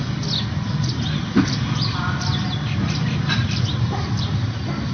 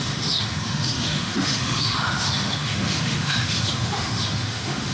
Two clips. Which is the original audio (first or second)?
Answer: first